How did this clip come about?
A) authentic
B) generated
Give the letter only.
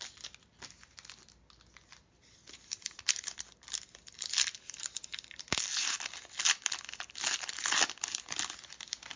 A